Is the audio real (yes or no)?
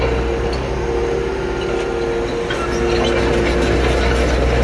yes